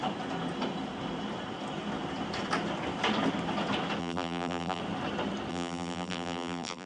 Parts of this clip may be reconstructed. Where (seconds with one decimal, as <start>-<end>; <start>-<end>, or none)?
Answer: 4.0-4.8; 5.5-6.9